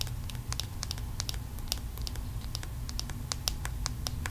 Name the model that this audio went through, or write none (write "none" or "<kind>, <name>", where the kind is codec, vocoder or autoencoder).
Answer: none